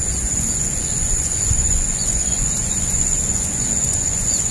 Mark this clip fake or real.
fake